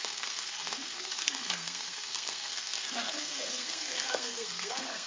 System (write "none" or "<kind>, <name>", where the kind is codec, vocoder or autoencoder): codec, SNAC